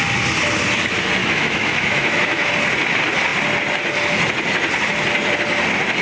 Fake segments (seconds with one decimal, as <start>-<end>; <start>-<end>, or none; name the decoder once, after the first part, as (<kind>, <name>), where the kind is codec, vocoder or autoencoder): 1.2-2.5 (autoencoder, DAC-VAE)

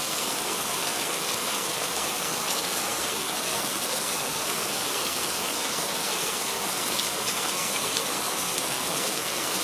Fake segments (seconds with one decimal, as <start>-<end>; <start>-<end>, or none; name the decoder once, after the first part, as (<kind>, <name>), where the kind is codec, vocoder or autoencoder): 0.0-9.6 (codec, SNAC)

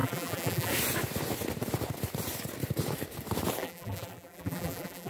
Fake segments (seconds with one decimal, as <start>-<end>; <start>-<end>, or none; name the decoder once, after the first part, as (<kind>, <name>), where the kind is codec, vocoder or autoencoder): 0.0-0.7 (vocoder, BigVGAN v2); 3.6-5.1

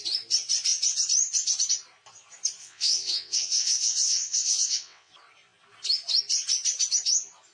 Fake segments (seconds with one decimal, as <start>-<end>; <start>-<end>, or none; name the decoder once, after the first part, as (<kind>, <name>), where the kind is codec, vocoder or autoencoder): 2.6-5.1 (vocoder, WaveNeXt)

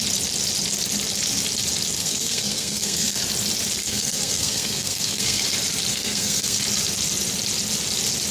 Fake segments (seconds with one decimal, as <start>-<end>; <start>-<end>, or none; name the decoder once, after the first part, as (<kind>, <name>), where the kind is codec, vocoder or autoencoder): 2.0-3.2 (codec, SNAC); 3.8-5.4; 5.9-6.6

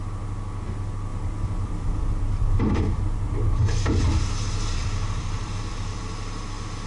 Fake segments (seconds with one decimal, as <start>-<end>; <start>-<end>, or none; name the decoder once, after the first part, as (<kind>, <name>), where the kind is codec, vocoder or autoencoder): 1.1-3.6 (vocoder, BigVGAN v2); 4.8-6.1

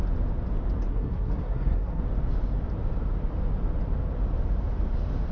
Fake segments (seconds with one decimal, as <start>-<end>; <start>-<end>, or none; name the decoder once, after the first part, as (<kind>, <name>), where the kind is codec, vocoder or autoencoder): 0.9-2.0 (codec, SNAC)

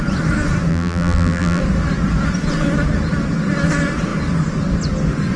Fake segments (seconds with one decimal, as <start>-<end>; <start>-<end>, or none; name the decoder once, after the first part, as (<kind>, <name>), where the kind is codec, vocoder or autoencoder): 0.7-1.6 (vocoder, BigVGAN v2)